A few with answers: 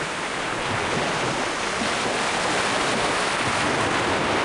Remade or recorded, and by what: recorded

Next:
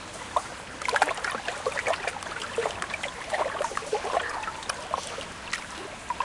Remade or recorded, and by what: recorded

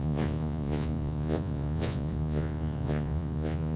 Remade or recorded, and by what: remade, vocoder, Vocos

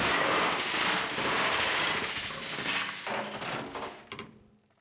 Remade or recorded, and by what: recorded